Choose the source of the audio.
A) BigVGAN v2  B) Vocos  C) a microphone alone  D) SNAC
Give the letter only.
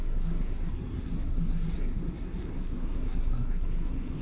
D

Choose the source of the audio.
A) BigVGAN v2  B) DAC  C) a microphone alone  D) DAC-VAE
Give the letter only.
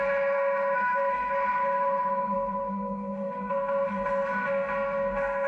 D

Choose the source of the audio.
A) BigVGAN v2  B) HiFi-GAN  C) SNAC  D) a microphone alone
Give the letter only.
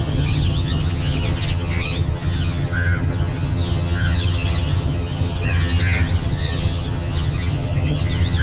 B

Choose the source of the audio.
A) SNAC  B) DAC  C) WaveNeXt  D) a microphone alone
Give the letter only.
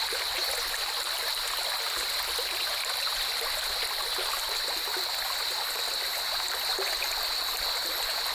D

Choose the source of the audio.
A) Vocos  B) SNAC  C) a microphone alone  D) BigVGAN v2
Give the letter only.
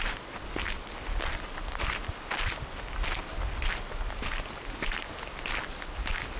C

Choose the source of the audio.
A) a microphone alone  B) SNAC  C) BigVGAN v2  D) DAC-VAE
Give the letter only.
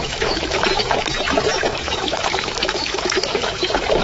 D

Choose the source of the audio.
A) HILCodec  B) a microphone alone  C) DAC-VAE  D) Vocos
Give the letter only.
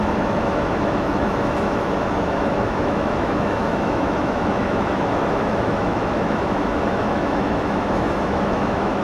C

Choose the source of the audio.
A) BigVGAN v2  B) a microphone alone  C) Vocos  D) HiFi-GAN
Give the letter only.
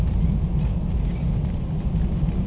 B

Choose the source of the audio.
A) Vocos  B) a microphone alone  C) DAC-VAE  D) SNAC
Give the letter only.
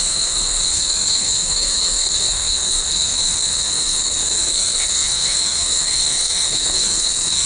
D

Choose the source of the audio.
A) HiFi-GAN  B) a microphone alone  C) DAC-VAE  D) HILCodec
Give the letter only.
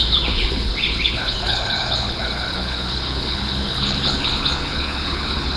D